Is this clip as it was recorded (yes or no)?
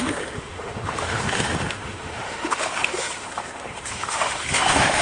no